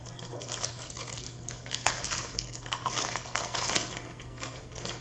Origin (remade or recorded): remade